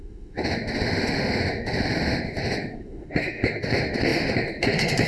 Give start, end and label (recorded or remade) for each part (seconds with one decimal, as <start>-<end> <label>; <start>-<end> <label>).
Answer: 0.0-5.1 remade